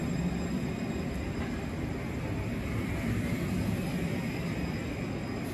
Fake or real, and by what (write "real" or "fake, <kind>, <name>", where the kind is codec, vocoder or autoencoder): real